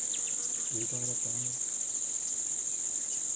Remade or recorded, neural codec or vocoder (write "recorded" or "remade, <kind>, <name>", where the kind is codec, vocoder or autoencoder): recorded